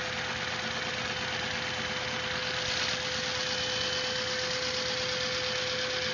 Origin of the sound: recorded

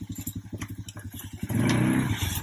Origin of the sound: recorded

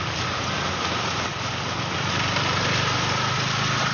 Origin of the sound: recorded